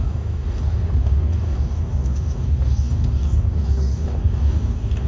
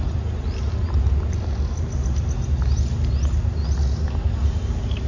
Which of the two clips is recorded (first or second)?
second